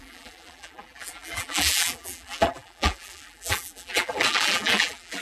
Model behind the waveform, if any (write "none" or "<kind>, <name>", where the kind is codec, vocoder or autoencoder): vocoder, BigVGAN v2